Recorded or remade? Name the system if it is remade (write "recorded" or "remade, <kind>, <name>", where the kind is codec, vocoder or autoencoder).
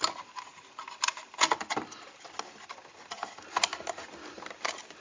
recorded